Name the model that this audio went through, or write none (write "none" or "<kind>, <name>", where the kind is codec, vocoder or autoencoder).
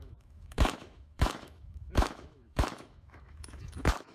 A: autoencoder, DAC-VAE